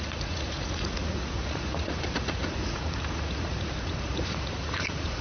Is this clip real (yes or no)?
no